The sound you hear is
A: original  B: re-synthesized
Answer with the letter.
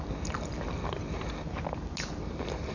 A